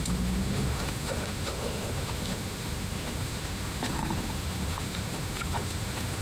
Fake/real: fake